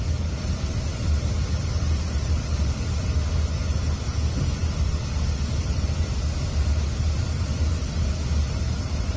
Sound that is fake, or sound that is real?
real